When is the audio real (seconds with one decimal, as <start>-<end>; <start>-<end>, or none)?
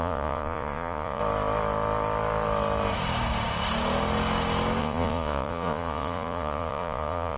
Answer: 1.2-4.8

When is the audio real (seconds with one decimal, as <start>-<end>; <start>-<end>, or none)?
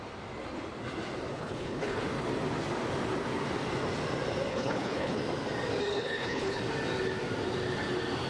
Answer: 0.0-1.3; 2.0-4.5; 5.2-5.9; 6.6-8.3